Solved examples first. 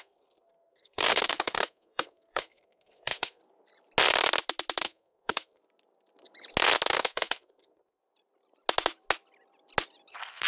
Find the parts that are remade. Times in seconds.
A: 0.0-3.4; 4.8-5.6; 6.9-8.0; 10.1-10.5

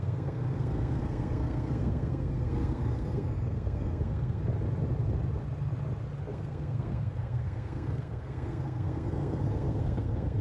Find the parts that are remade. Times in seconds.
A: 0.0-4.4; 6.3-10.4

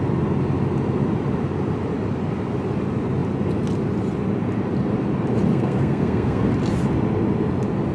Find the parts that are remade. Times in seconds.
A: 5.5-6.5

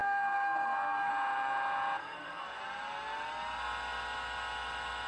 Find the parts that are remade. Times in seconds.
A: 0.0-1.1; 2.0-2.6

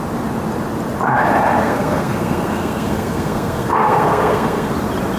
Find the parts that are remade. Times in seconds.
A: 1.6-4.7

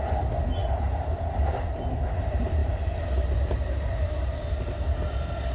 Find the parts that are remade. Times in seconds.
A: none

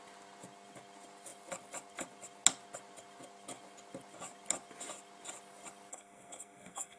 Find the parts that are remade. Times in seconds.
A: 5.9-7.0